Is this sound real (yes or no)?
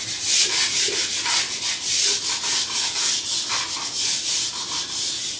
yes